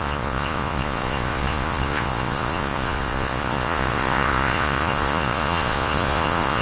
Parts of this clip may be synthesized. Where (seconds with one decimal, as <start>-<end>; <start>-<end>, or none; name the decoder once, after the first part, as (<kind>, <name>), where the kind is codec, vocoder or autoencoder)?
0.0-6.6 (vocoder, Vocos)